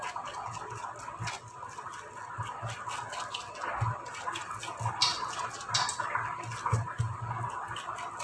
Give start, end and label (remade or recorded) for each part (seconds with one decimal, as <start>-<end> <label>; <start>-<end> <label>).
0.0-5.0 recorded; 5.0-5.7 remade; 5.7-8.2 recorded